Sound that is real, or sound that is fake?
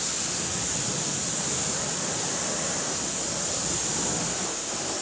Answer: real